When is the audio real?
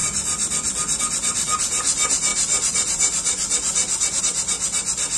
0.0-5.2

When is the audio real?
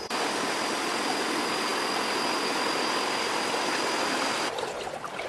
0.0-5.3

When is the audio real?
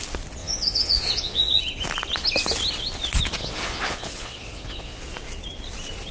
0.0-0.4; 1.6-3.4; 5.0-6.1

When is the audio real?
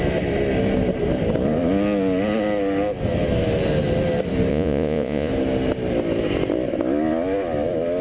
0.0-4.5; 5.3-8.0